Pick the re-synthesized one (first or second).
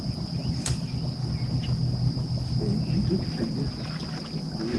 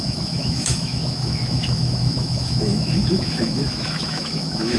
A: second